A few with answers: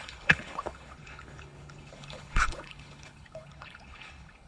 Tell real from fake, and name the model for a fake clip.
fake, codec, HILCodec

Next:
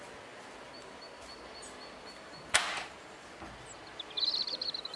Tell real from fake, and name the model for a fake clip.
real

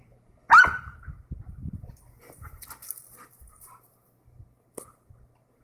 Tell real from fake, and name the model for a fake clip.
real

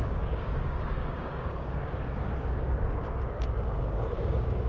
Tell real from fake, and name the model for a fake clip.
fake, codec, DAC